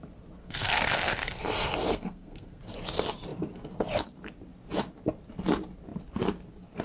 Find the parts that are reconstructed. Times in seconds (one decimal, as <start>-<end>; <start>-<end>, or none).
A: 0.4-1.4; 1.9-2.6